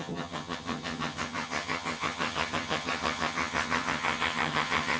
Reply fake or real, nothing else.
fake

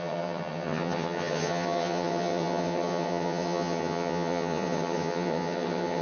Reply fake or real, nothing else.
fake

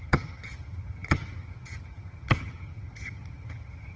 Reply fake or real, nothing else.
fake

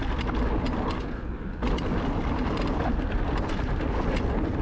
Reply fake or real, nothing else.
real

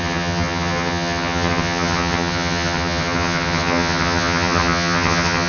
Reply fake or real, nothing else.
fake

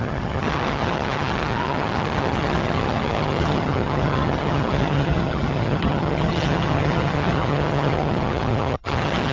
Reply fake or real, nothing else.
fake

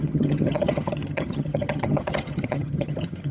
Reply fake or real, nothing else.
fake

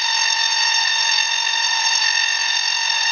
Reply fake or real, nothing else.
real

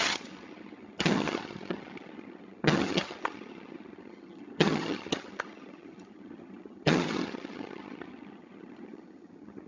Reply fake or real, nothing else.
fake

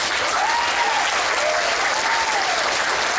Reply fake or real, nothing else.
real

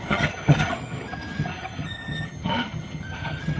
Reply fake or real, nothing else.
fake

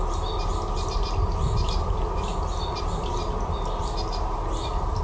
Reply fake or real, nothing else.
real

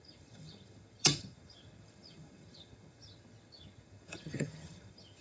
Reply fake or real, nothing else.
fake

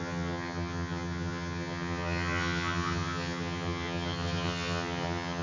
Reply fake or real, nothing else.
fake